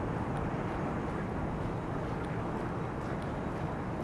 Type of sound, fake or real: real